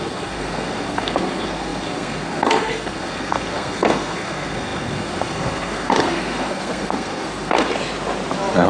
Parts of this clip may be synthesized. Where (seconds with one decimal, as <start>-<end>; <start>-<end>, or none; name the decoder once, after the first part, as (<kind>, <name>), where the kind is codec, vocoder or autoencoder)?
0.0-7.7 (codec, SNAC)